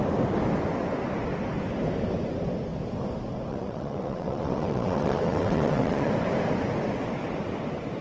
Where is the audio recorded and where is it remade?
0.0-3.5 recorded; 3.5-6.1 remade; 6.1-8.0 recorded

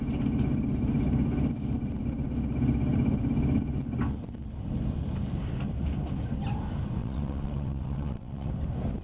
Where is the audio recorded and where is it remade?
0.0-7.0 recorded; 7.0-8.5 remade; 8.5-9.0 recorded

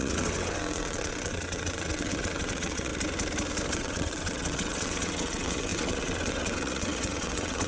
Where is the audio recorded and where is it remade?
0.0-2.9 remade; 2.9-3.7 recorded; 3.7-7.7 remade

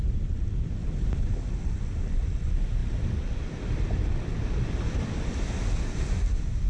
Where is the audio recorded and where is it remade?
0.0-6.7 recorded

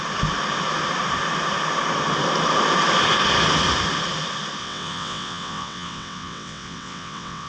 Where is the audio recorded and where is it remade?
0.0-4.6 recorded; 4.6-7.5 remade

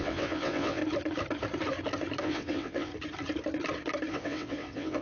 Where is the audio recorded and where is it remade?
0.0-0.8 remade; 0.8-2.2 recorded; 2.2-2.9 remade; 2.9-4.1 recorded; 4.1-5.0 remade